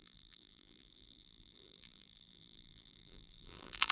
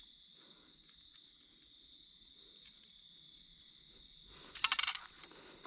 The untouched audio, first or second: second